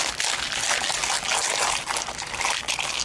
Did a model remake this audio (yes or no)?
no